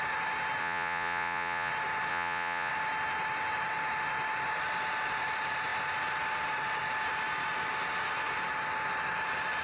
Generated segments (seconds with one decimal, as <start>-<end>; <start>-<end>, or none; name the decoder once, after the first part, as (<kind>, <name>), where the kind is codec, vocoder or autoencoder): 0.6-1.7 (vocoder, Vocos); 2.1-2.7